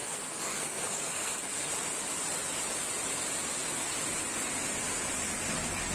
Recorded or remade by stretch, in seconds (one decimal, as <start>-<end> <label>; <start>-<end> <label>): 0.0-1.7 remade; 1.7-5.9 recorded